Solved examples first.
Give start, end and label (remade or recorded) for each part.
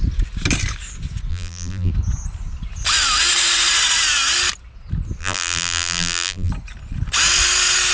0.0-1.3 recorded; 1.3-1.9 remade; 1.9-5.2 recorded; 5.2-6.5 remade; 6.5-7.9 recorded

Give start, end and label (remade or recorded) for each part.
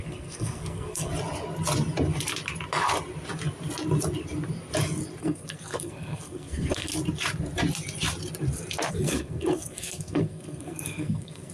0.0-1.1 remade; 1.1-5.2 recorded; 5.2-6.9 remade; 6.9-8.9 recorded; 8.9-11.5 remade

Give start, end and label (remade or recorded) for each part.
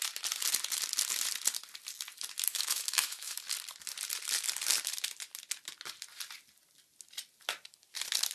0.0-2.5 recorded; 2.5-3.4 remade; 3.4-8.3 recorded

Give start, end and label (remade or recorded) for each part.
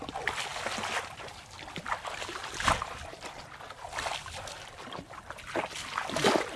0.0-6.6 recorded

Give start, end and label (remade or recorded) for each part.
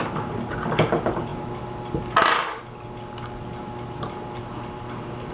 0.0-5.3 recorded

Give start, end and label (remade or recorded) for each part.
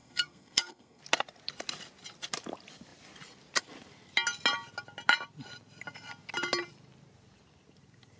0.0-1.0 remade; 1.0-8.2 recorded